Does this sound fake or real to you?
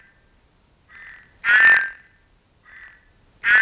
real